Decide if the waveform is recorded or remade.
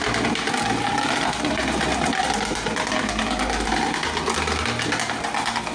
recorded